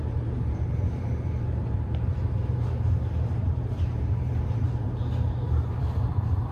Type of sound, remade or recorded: remade